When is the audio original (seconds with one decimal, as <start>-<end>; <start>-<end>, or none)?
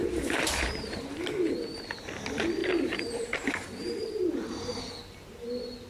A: 1.3-2.6; 4.8-5.9